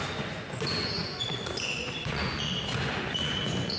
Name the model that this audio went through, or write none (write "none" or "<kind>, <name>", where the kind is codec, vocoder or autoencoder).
vocoder, Vocos